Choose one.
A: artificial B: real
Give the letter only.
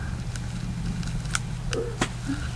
B